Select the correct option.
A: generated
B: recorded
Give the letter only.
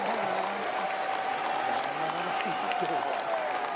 B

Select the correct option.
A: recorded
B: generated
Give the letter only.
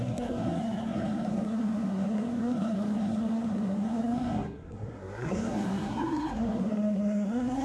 B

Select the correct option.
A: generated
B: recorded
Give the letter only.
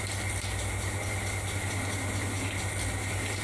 B